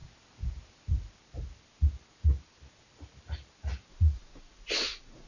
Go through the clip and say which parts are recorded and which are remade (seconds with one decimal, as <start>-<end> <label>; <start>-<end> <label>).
0.0-3.9 recorded; 3.9-5.3 remade